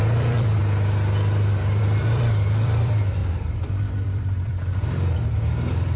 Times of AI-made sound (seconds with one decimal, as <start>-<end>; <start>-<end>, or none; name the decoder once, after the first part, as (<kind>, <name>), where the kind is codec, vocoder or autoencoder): 0.0-0.6 (vocoder, BigVGAN v2); 1.8-6.0